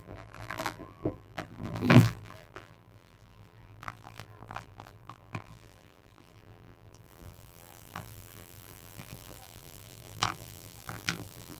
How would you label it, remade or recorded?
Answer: remade